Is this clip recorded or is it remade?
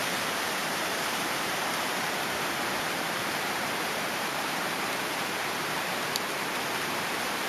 remade